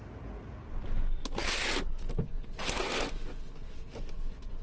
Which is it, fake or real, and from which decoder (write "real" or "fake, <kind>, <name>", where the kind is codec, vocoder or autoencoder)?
real